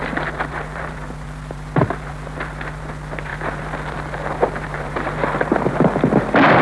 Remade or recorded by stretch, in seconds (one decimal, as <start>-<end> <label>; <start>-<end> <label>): 0.0-6.6 recorded